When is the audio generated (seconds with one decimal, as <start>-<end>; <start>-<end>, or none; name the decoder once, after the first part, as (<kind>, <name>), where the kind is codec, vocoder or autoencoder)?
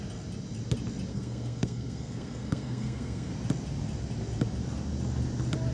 1.1-3.3 (codec, SNAC)